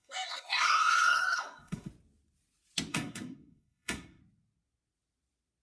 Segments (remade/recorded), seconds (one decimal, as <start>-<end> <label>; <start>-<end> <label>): 0.0-1.9 remade; 1.9-2.9 recorded; 2.9-4.2 remade; 4.2-5.6 recorded